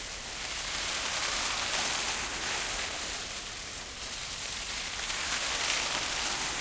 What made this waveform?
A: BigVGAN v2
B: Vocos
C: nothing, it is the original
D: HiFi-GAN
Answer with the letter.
C